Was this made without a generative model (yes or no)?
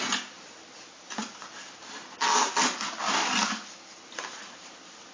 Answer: yes